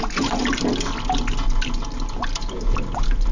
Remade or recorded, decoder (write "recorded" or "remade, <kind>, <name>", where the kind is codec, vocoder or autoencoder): recorded